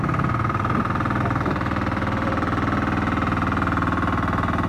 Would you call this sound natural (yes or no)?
yes